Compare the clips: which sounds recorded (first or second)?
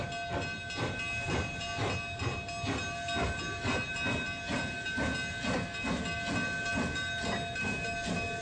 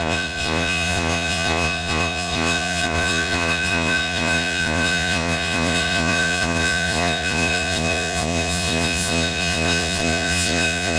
first